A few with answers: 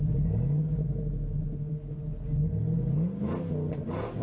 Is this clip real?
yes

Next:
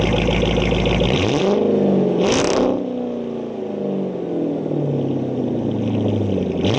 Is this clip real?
yes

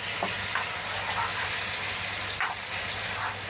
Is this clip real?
yes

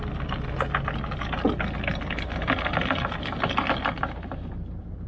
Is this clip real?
yes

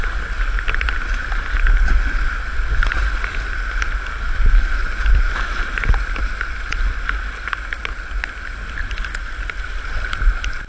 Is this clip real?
yes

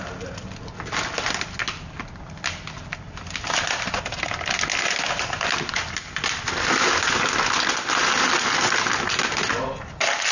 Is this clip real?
yes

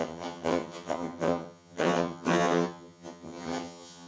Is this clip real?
no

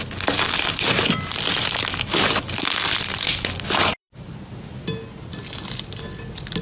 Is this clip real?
yes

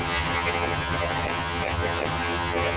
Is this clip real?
no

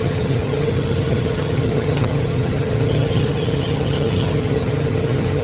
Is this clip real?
no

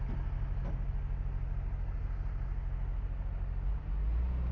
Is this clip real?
yes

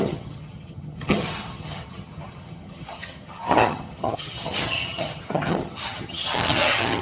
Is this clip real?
no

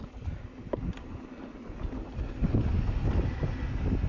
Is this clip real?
yes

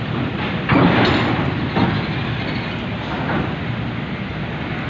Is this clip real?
yes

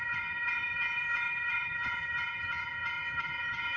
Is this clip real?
no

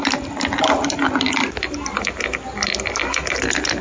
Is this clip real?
yes